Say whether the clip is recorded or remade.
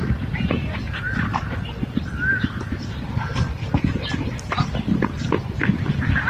recorded